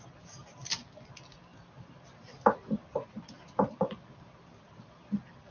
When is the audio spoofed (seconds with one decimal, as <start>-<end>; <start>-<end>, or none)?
none